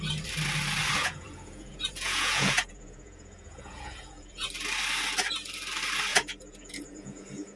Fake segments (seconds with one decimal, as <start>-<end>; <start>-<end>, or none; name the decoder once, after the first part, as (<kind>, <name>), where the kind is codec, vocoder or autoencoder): 1.0-4.5 (vocoder, Vocos); 6.1-7.6